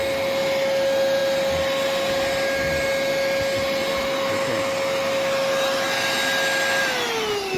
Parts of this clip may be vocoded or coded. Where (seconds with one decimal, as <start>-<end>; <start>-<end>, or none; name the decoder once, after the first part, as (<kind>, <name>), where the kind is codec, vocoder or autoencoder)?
none